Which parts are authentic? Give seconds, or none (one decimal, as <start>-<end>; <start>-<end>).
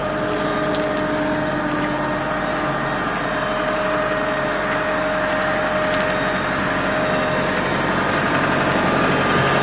0.0-9.6